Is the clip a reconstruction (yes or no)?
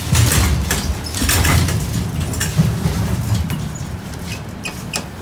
no